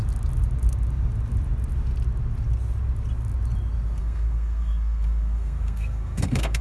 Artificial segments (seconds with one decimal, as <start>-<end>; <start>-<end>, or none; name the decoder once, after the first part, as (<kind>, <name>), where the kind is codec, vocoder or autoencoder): 4.0-6.6 (codec, SNAC)